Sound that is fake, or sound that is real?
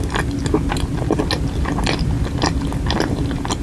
real